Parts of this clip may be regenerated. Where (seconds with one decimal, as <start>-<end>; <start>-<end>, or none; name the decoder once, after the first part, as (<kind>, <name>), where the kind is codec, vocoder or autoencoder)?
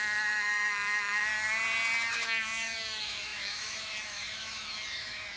0.0-1.3 (autoencoder, DAC-VAE); 2.1-5.4